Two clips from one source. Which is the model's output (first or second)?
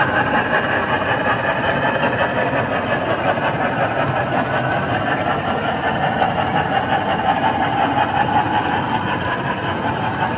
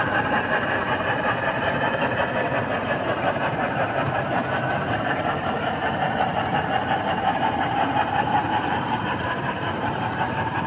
second